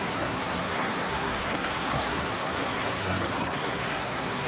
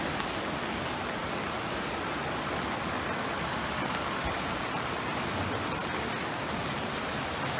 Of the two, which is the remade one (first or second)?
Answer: first